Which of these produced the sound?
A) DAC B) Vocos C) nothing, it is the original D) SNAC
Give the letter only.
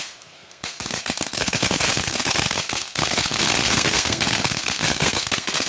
D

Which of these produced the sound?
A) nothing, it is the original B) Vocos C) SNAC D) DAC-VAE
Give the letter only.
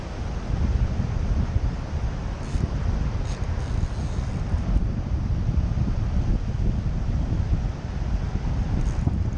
A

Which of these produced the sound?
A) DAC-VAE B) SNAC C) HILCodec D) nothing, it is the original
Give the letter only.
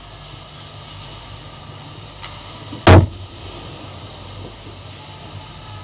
D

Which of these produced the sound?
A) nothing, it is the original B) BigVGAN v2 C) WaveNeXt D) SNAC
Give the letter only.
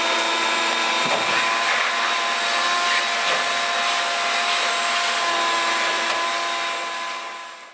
A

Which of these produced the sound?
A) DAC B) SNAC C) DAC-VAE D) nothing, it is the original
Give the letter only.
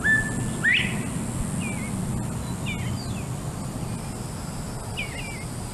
D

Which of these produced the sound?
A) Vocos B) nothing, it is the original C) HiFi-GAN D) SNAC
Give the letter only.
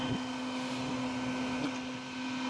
B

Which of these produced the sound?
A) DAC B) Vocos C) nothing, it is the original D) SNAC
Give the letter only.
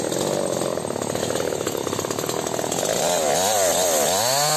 C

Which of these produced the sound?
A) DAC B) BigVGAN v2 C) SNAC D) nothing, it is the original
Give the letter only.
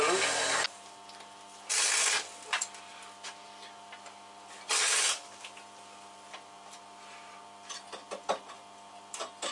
D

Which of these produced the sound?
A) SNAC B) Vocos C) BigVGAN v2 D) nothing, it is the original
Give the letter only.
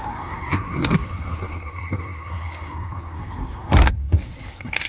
A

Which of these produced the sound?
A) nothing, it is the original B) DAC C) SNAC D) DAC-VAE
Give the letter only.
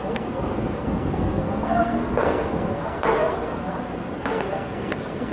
C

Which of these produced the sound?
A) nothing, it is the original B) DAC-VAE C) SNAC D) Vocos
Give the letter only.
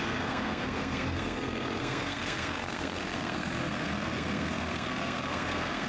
C